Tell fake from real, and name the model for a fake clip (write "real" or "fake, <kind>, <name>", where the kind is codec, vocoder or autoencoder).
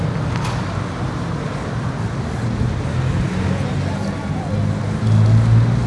real